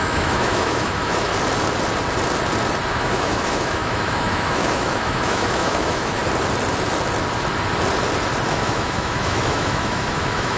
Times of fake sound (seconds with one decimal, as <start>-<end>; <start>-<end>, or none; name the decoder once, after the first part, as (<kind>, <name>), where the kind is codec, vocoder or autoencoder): 0.0-1.3 (autoencoder, DAC-VAE); 2.9-6.2; 8.5-10.6